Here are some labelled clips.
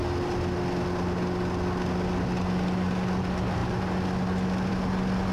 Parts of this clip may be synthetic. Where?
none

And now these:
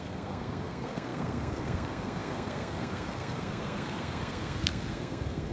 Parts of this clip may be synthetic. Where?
0.0-5.5 (codec, SNAC)

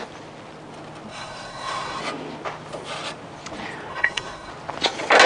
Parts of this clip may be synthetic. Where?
1.1-2.0 (codec, SNAC); 3.9-4.5

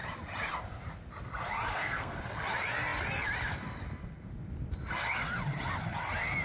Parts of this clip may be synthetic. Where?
1.7-2.2 (codec, SNAC)